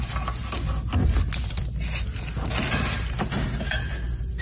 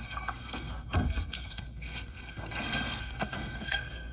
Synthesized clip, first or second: second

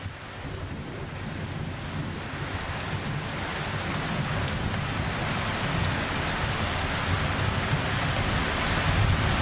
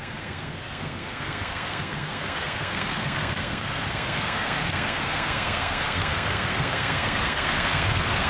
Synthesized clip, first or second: second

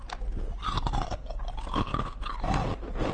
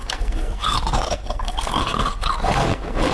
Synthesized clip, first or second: second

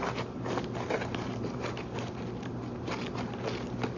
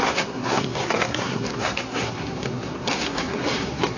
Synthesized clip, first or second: second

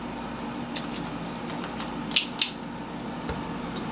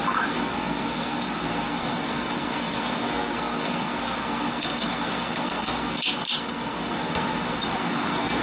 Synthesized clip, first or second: second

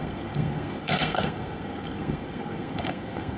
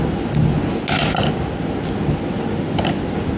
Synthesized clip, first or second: first